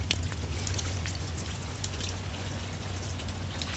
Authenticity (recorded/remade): remade